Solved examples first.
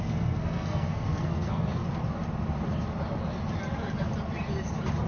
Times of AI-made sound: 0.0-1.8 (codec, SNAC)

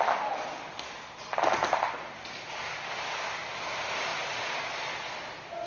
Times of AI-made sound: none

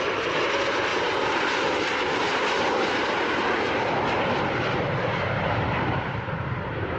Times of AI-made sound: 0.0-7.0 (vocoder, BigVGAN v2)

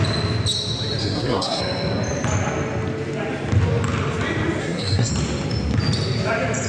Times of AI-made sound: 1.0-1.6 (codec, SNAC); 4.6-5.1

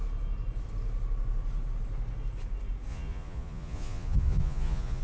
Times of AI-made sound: 2.9-5.0 (vocoder, Vocos)

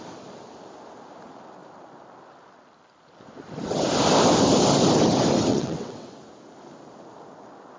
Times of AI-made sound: 5.5-6.1 (vocoder, WaveNeXt)

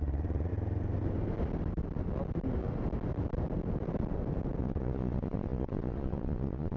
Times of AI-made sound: 0.0-0.5 (vocoder, Vocos); 4.6-6.8